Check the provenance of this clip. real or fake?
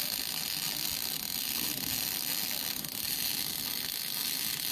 real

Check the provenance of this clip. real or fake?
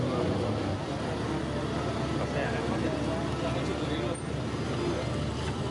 real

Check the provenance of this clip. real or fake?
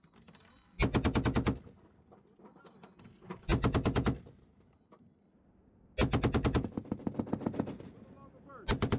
real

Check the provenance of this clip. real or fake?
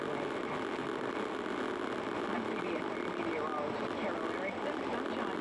real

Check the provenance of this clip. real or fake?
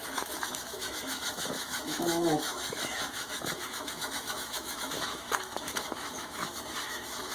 fake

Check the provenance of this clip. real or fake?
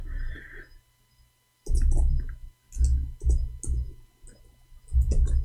real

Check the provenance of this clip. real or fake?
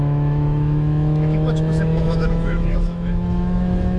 fake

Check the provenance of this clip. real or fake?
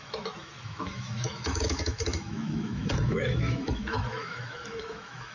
fake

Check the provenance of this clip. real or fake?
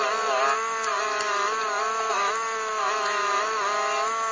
real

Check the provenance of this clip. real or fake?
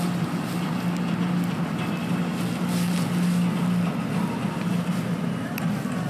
real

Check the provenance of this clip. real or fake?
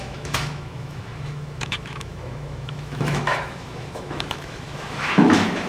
fake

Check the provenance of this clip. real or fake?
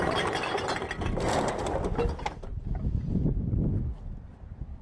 real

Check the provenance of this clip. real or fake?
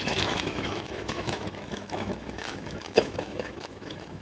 fake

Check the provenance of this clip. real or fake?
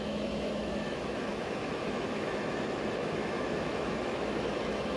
fake